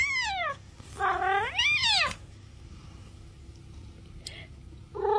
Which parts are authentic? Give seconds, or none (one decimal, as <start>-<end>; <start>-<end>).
0.0-5.2